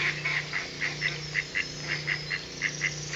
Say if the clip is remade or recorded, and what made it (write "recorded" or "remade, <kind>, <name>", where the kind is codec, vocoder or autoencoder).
recorded